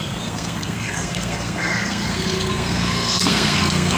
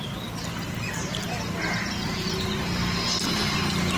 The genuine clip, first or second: second